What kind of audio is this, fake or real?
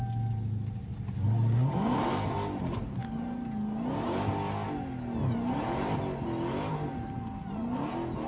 real